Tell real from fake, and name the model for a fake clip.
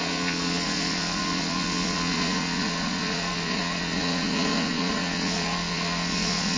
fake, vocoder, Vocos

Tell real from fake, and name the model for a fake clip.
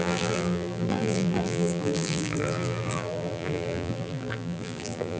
fake, vocoder, BigVGAN v2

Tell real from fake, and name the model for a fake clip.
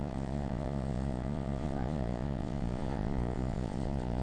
fake, vocoder, Vocos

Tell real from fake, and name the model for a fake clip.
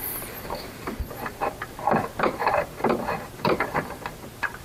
fake, vocoder, BigVGAN v2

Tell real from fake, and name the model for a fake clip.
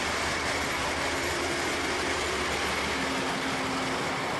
real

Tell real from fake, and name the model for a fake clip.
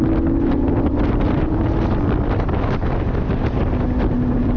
real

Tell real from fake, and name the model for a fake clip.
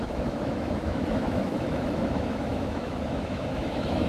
fake, autoencoder, DAC-VAE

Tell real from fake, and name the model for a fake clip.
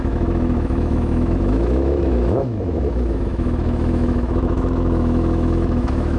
fake, autoencoder, DAC-VAE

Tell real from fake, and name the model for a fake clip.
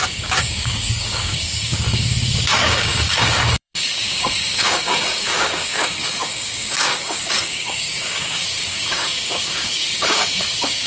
fake, codec, DAC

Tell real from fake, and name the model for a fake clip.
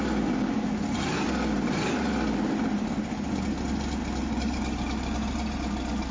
real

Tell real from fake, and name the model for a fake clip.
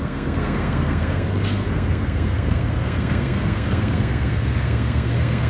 fake, codec, SNAC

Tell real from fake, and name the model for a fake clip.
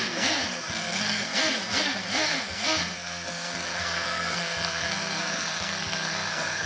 fake, codec, SNAC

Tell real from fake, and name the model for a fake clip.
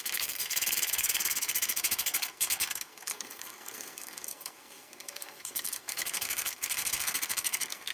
fake, codec, SNAC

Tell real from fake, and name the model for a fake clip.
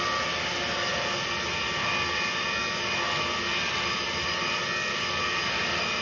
real